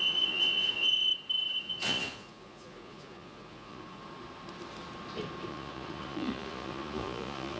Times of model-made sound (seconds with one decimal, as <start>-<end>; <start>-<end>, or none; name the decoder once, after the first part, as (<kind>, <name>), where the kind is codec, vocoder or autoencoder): 0.0-1.1 (vocoder, Vocos); 1.6-4.0; 5.5-7.6